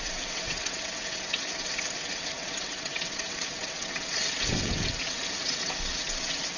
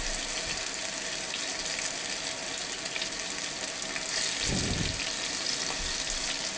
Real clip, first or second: second